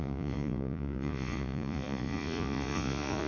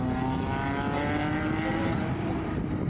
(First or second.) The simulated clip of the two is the first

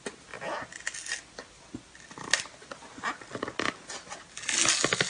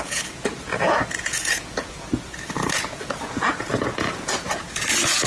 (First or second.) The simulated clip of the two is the second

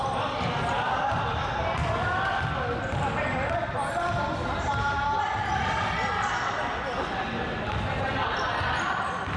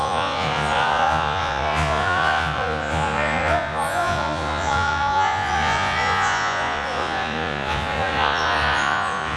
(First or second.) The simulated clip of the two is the second